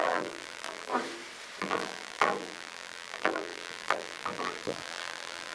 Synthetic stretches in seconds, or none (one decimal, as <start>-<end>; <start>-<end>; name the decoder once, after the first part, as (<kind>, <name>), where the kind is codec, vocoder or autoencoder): 0.0-0.9 (vocoder, BigVGAN v2); 1.6-5.5